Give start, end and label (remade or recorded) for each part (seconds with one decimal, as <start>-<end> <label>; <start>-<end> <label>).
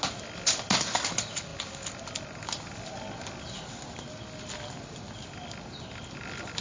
0.0-6.6 recorded